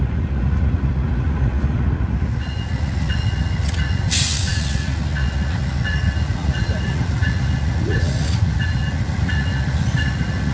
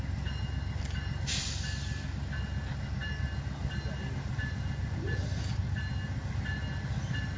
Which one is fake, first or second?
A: first